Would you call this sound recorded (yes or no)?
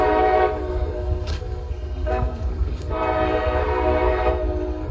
no